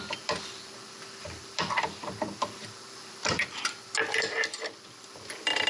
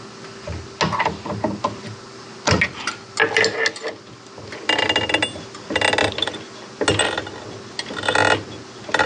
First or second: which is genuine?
second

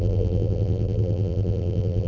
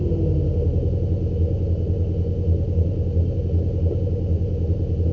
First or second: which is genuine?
second